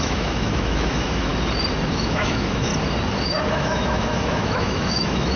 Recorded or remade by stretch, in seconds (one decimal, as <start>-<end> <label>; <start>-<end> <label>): 0.0-1.3 remade; 1.3-1.9 recorded; 1.9-2.7 remade; 2.7-3.5 recorded; 3.5-5.4 remade